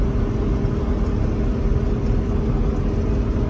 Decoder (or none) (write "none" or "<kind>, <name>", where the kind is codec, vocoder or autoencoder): none